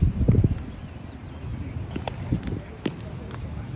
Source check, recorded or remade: recorded